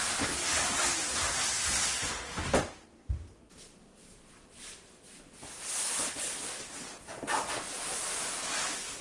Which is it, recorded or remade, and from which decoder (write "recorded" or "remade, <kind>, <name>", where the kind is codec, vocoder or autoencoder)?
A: recorded